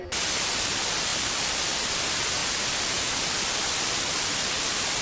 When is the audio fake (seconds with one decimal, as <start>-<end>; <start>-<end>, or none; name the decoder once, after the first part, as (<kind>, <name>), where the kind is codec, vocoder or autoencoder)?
none